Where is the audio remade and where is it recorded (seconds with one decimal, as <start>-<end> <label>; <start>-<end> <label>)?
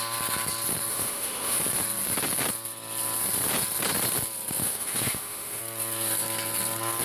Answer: 0.0-0.9 recorded; 0.9-1.6 remade; 1.6-4.6 recorded; 4.6-5.6 remade; 5.6-7.0 recorded